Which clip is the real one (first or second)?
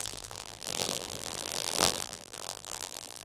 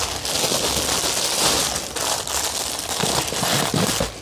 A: second